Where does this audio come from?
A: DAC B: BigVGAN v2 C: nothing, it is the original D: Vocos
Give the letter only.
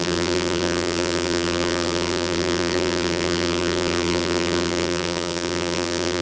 B